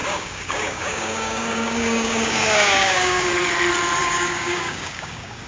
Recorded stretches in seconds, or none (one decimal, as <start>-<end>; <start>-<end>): 3.3-4.0